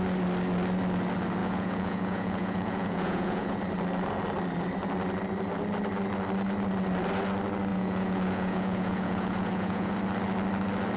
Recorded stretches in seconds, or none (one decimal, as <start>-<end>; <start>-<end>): 0.0-1.4; 3.6-7.7; 9.9-11.0